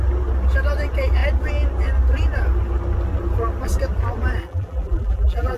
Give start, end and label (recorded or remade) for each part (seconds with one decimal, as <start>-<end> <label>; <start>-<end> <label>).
0.0-4.4 recorded; 4.4-5.6 remade